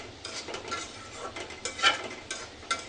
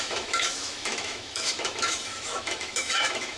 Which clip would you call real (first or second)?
first